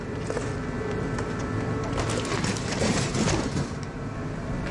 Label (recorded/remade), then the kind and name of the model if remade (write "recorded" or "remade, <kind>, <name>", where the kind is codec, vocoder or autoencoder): recorded